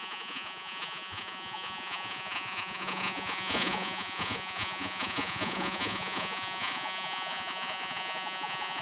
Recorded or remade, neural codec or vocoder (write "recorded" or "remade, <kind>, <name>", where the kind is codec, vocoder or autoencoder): remade, vocoder, Vocos